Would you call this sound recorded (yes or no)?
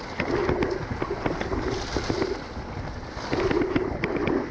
yes